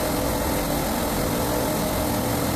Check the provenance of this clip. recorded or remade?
recorded